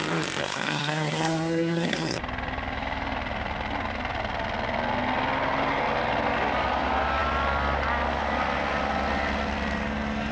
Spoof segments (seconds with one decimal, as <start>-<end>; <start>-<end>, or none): 0.4-2.2